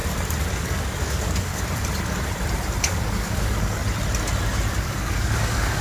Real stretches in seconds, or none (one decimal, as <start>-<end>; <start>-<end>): 0.0-0.5; 1.5-2.8; 3.8-4.7